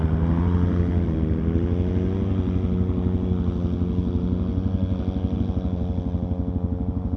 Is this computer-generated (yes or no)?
no